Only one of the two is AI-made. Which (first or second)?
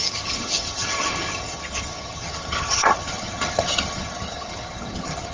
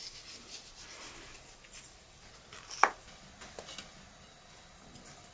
first